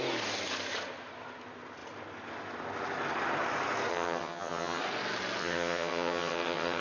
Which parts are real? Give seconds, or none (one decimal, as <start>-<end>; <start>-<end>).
0.0-3.9; 4.8-5.4